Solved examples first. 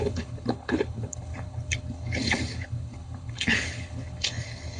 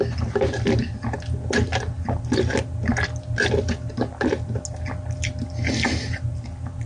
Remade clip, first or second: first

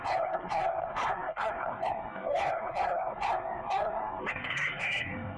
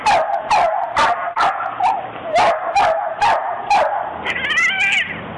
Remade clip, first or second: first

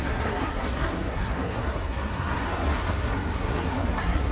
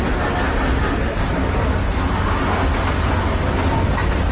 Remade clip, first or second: first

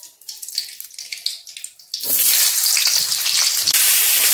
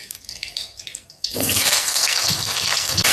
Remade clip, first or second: second